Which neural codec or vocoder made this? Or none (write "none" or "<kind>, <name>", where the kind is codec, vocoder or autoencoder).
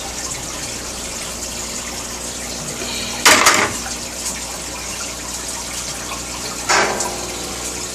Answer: none